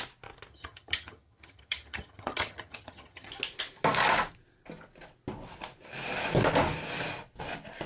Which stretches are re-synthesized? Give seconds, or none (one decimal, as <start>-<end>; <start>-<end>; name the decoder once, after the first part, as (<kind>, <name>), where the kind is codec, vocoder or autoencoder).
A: 0.5-3.3 (vocoder, HiFi-GAN)